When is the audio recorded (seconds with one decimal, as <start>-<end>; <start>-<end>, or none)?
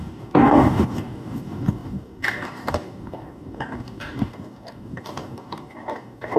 none